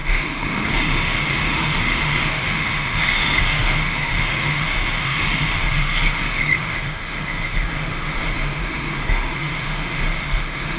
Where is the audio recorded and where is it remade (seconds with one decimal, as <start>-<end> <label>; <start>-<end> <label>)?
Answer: 0.0-10.8 remade